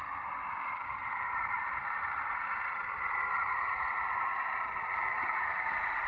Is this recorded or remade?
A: recorded